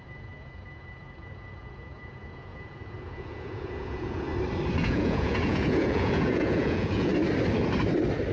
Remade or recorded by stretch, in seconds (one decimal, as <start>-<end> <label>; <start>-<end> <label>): 0.0-4.3 remade; 4.3-4.8 recorded; 4.8-7.1 remade; 7.1-8.3 recorded